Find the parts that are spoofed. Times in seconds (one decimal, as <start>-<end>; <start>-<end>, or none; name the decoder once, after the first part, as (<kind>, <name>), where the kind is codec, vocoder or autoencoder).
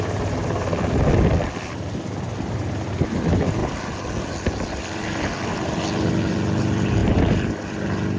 0.0-3.6 (vocoder, BigVGAN v2); 4.8-8.2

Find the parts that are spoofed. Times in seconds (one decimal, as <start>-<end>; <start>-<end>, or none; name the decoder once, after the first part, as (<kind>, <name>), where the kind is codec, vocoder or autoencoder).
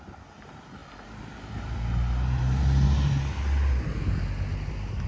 none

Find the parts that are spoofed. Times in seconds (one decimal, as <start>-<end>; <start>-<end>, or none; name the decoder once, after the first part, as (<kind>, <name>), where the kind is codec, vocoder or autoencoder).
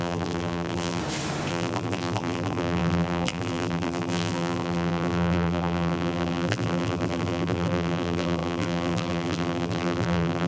0.0-1.0 (vocoder, BigVGAN v2); 1.5-10.5